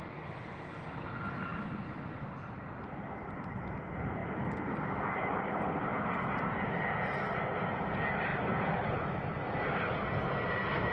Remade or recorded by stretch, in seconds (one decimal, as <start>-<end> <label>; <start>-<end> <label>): 0.0-10.9 recorded